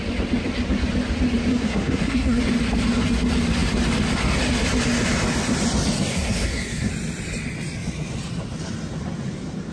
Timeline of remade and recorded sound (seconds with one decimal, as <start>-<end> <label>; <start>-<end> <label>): 0.0-1.5 recorded; 1.5-2.4 remade; 2.4-6.1 recorded; 6.1-6.9 remade; 6.9-9.7 recorded